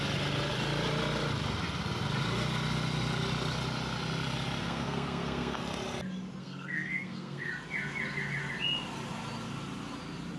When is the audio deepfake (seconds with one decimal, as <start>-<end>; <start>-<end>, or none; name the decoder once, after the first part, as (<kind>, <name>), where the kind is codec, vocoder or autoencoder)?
4.6-5.6 (codec, SNAC); 6.4-7.5